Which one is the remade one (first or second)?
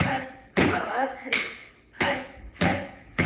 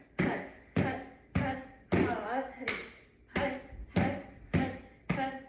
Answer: first